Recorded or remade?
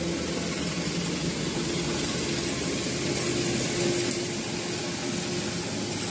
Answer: recorded